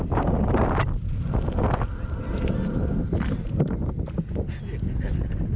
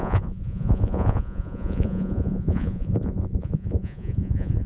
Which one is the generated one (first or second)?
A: second